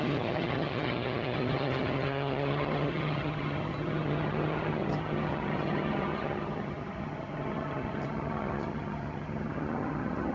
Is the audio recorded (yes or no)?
no